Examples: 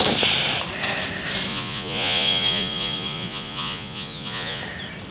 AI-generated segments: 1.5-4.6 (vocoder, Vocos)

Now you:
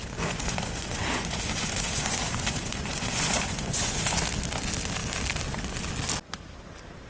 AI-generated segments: 0.0-4.2 (vocoder, Vocos)

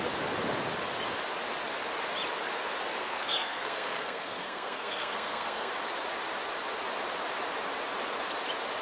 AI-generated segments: 3.0-5.7 (codec, SNAC)

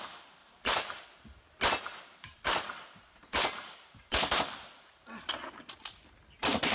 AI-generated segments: 0.4-1.0 (vocoder, BigVGAN v2); 2.1-4.4

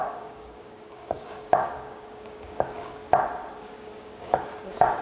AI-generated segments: 0.0-3.0 (codec, DAC); 3.6-5.0

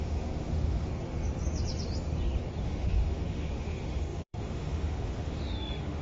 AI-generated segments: 0.0-0.9 (autoencoder, DAC-VAE); 2.6-6.0

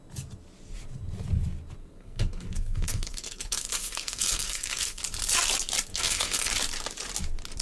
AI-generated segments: 1.8-5.0 (codec, SNAC); 5.9-6.5